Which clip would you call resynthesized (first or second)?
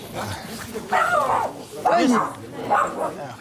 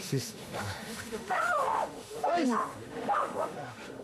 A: second